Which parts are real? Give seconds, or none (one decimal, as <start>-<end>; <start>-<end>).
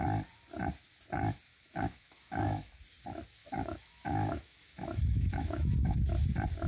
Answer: 0.0-1.5; 2.8-3.4; 6.0-6.7